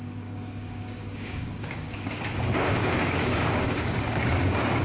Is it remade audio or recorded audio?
remade